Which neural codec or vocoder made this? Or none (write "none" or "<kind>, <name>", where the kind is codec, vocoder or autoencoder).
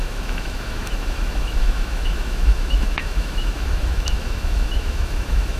autoencoder, DAC-VAE